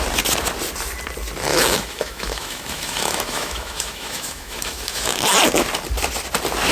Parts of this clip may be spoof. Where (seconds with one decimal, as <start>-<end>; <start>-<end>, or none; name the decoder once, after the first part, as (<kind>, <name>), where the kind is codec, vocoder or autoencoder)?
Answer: 1.5-5.2 (autoencoder, DAC-VAE)